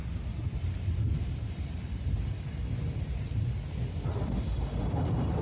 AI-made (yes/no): yes